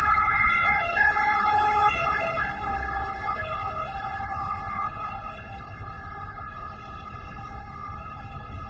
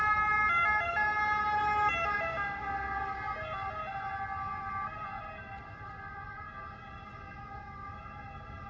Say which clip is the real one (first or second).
second